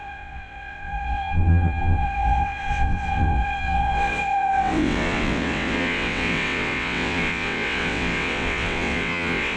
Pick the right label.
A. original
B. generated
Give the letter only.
B